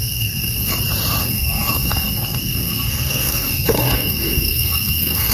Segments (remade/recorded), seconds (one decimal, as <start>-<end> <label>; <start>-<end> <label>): 0.0-0.7 remade; 0.7-1.2 recorded; 1.2-5.3 remade